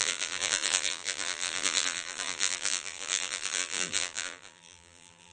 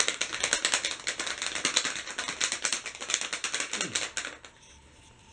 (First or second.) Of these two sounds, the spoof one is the first